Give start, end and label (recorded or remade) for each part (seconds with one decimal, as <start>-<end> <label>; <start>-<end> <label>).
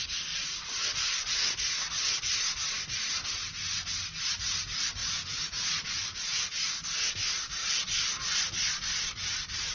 0.0-5.0 recorded; 5.0-7.1 remade; 7.1-9.7 recorded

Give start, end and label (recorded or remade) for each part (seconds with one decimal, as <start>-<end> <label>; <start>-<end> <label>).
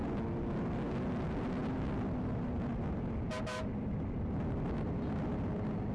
0.0-5.9 recorded